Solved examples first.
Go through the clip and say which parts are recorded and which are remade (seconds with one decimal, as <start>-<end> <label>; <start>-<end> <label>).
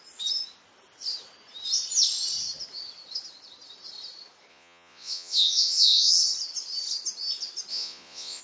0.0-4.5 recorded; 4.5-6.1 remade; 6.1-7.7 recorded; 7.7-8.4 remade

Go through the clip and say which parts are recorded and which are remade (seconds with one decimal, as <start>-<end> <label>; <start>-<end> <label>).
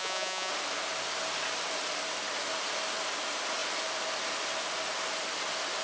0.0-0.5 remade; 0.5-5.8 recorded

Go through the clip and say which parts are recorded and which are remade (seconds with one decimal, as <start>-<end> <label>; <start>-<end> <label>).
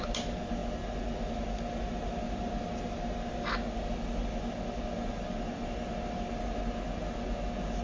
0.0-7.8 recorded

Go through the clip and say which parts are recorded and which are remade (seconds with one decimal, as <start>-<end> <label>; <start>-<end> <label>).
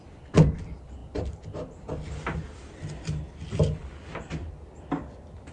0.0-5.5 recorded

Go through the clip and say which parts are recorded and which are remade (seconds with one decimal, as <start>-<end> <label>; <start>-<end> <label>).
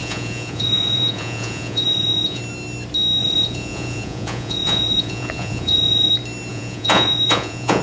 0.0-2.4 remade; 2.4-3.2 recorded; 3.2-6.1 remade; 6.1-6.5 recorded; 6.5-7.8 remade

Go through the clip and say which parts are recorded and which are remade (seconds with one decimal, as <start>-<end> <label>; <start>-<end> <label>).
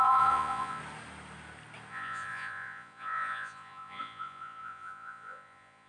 0.0-0.8 remade; 0.8-1.9 recorded; 1.9-5.9 remade